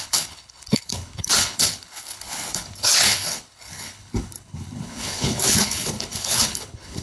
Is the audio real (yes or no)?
no